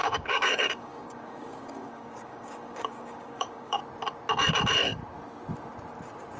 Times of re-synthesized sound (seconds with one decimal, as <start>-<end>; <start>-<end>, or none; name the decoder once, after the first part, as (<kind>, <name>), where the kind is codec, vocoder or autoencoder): 0.0-3.8 (codec, DAC)